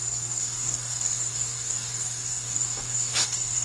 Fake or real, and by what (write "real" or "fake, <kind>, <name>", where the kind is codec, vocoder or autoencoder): fake, codec, DAC